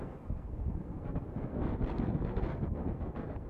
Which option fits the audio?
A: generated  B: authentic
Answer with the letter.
A